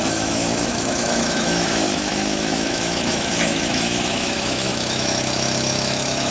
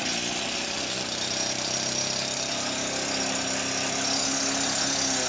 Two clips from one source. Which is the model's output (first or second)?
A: first